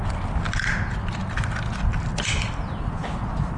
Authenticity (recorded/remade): recorded